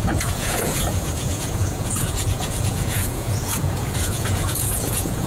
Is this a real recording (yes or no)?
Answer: no